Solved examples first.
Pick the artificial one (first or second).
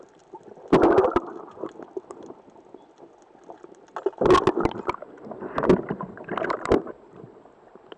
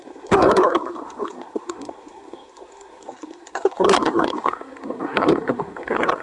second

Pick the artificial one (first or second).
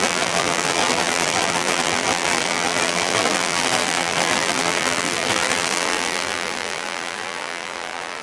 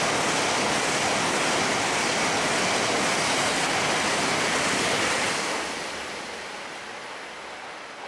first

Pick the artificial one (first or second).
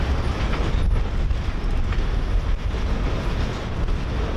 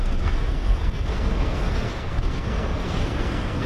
second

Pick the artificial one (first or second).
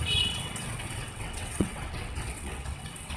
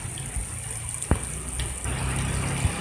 first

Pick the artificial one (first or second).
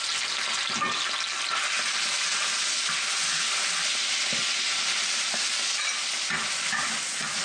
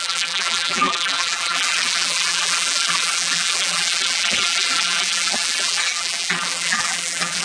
second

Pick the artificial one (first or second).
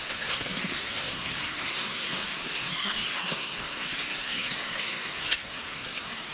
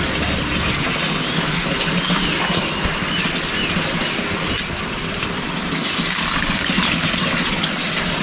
first